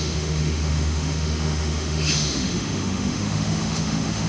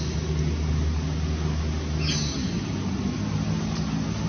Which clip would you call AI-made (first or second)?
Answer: first